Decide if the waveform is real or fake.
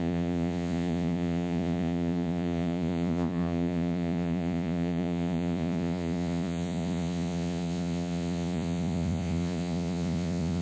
fake